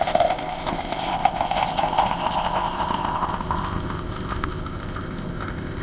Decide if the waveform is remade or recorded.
remade